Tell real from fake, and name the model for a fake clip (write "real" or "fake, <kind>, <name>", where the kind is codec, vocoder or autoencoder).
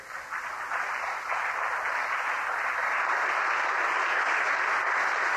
real